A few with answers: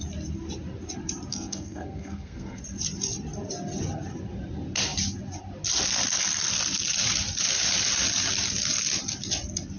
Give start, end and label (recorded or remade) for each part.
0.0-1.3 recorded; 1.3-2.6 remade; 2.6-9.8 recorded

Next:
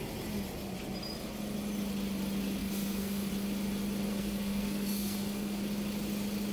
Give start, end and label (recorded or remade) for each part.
0.0-2.6 recorded; 2.6-3.3 remade; 3.3-4.1 recorded; 4.1-5.6 remade; 5.6-6.5 recorded